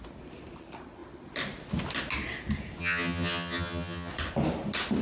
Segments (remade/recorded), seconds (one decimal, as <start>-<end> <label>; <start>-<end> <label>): 0.0-2.8 recorded; 2.8-4.1 remade; 4.1-5.0 recorded